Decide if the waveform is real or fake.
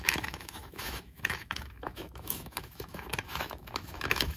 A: fake